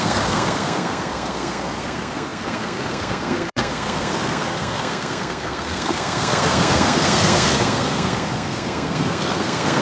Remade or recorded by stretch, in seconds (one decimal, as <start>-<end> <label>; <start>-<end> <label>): 0.0-9.8 remade

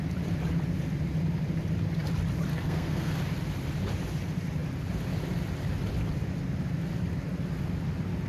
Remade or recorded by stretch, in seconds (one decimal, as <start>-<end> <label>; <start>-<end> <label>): 0.0-2.5 recorded; 2.5-3.1 remade; 3.1-8.3 recorded

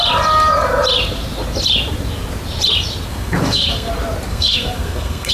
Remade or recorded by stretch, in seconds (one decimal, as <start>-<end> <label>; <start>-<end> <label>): 0.0-3.1 recorded; 3.1-3.9 remade; 3.9-4.3 recorded; 4.3-5.3 remade

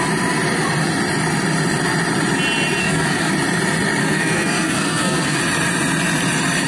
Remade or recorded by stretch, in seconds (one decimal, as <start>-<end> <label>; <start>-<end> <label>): 0.0-2.8 recorded; 2.8-3.3 remade; 3.3-4.0 recorded; 4.0-5.4 remade; 5.4-6.7 recorded

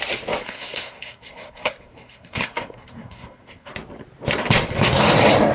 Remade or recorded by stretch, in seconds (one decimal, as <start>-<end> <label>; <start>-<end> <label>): 0.0-0.4 recorded; 0.4-3.7 remade; 3.7-5.5 recorded

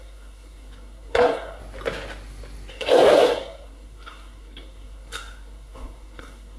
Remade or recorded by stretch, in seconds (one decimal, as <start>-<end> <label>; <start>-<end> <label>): 0.0-1.6 remade; 1.6-2.7 recorded; 2.7-6.6 remade

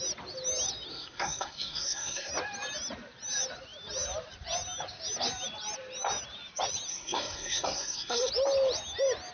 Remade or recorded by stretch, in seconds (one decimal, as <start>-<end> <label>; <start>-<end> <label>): 0.0-0.9 recorded; 0.9-2.3 remade; 2.3-6.9 recorded; 6.9-8.3 remade; 8.3-9.3 recorded